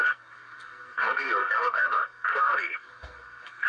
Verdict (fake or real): fake